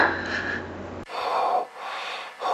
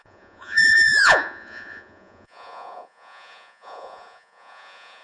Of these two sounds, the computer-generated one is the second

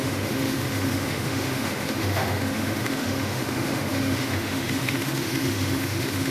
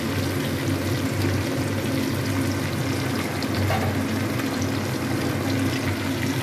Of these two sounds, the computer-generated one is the first